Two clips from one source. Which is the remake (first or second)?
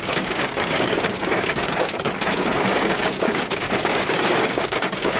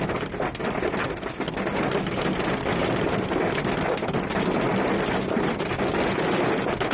first